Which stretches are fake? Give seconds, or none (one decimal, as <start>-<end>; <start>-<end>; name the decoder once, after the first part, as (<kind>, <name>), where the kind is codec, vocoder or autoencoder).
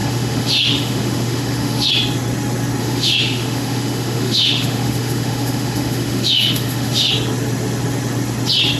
0.0-1.9 (autoencoder, DAC-VAE); 2.8-7.1